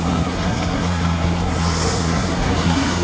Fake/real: fake